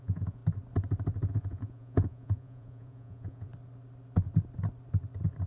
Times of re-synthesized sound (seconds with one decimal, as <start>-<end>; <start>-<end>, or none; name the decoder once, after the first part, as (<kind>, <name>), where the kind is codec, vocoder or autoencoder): 0.0-0.4 (vocoder, Vocos); 1.3-3.5

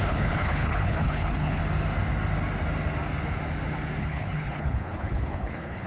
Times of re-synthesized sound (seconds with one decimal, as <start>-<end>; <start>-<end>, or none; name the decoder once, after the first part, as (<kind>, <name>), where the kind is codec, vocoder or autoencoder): 0.0-1.6 (codec, HILCodec); 4.0-5.9

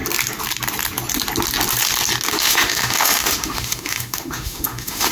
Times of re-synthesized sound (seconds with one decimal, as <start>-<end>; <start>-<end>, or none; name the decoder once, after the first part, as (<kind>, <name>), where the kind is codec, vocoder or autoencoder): 2.3-5.1 (autoencoder, DAC-VAE)

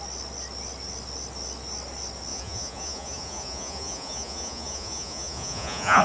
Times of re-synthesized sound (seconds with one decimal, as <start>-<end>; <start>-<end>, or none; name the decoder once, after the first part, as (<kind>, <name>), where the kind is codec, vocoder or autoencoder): 2.3-6.0 (vocoder, Vocos)

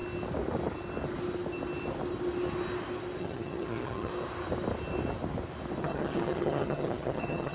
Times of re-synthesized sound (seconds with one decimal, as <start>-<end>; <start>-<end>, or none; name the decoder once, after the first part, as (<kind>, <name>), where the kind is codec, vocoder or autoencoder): 3.2-4.1 (vocoder, HiFi-GAN); 5.8-7.5

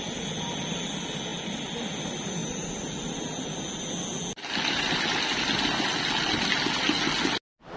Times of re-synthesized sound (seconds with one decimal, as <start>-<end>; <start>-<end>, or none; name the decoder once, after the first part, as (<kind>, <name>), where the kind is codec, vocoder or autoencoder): none